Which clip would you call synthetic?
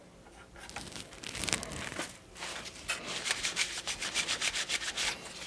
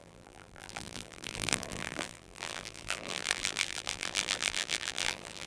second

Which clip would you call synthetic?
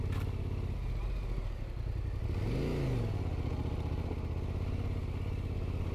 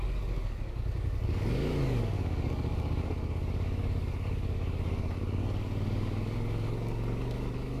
second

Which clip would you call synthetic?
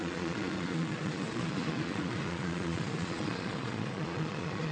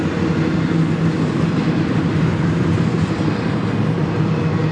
first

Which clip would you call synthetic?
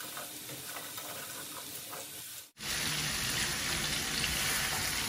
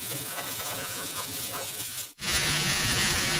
second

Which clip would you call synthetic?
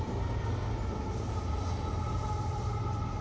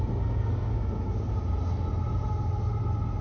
first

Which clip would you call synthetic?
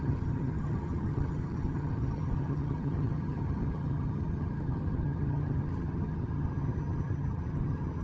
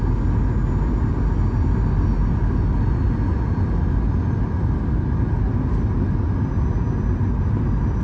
first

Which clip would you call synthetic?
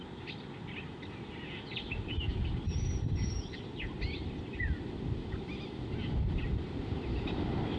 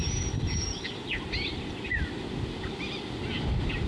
first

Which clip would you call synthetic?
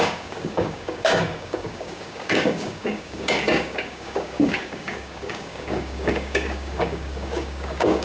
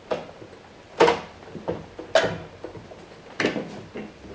first